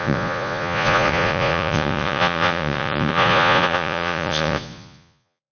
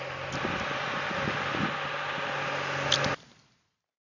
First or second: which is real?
second